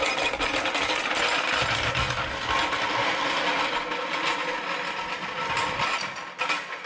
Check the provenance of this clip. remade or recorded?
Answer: recorded